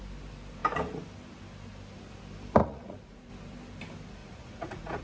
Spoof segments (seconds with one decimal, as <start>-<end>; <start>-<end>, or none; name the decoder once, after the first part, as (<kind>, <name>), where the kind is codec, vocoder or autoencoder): 2.6-3.3 (vocoder, Vocos); 4.2-5.0